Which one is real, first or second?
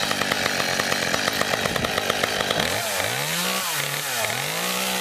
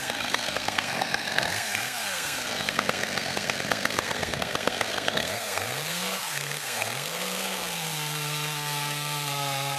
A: first